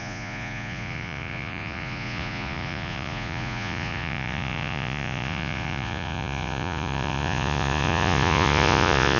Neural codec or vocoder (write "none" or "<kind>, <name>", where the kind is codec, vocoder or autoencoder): vocoder, Vocos